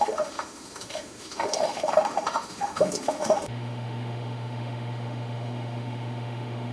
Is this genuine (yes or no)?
no